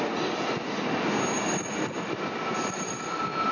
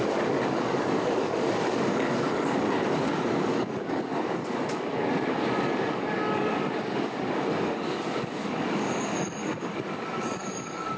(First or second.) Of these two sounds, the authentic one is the first